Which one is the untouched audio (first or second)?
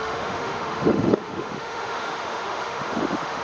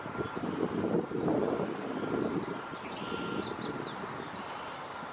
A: second